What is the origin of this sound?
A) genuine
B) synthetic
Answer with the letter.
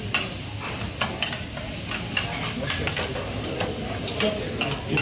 A